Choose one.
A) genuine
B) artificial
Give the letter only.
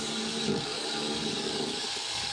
B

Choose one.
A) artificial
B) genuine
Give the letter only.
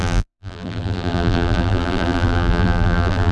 A